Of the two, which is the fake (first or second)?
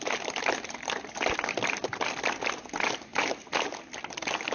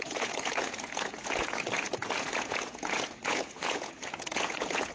second